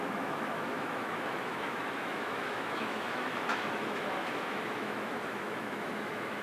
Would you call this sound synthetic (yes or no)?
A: yes